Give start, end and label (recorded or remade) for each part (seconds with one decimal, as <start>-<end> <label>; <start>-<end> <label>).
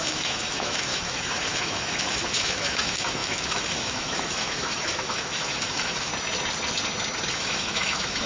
0.0-6.1 remade; 6.1-7.3 recorded; 7.3-8.3 remade